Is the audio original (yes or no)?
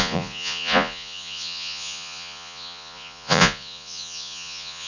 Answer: no